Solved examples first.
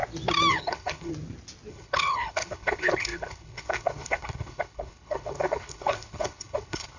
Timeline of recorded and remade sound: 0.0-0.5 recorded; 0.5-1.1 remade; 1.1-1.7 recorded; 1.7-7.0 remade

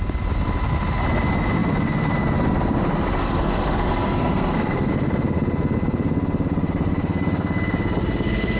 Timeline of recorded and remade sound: 0.0-3.2 recorded; 3.2-4.9 remade; 4.9-8.6 recorded

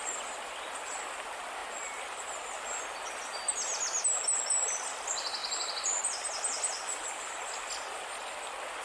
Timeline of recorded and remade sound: 0.0-5.4 recorded; 5.4-7.2 remade; 7.2-8.8 recorded

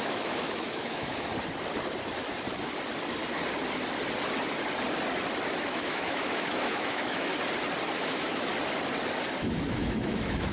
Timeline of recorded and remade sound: 0.0-1.3 remade; 1.3-5.6 recorded; 5.6-7.3 remade; 7.3-7.9 recorded; 7.9-8.5 remade; 8.5-9.4 recorded; 9.4-10.5 remade

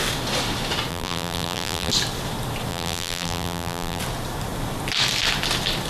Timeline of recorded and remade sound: 0.0-0.9 recorded; 0.9-1.9 remade; 1.9-2.7 recorded; 2.7-4.0 remade; 4.0-5.9 recorded

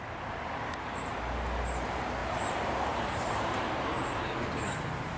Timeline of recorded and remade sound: 0.0-2.2 recorded; 2.2-4.0 remade; 4.0-5.2 recorded

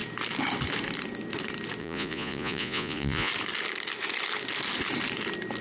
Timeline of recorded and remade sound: 0.0-1.8 recorded; 1.8-3.3 remade; 3.3-5.6 recorded

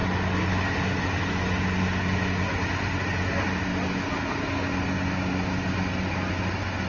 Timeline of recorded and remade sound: 0.0-6.9 recorded